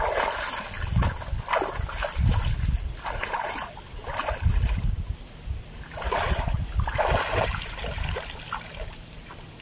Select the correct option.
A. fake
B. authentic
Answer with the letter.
B